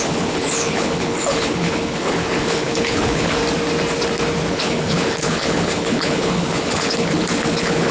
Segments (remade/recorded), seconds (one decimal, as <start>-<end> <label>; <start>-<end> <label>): 0.0-3.4 remade; 3.4-4.5 recorded; 4.5-7.9 remade